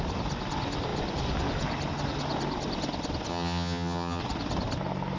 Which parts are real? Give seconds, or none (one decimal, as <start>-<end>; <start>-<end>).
0.0-3.3; 4.2-5.2